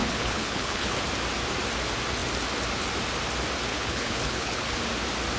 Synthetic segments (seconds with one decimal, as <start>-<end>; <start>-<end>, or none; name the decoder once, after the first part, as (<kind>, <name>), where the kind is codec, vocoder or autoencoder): 0.0-1.0 (codec, HILCodec); 3.7-4.8